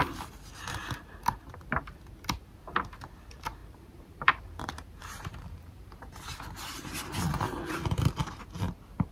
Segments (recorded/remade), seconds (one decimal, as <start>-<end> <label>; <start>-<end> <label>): 0.0-3.6 recorded; 3.6-8.4 remade; 8.4-9.1 recorded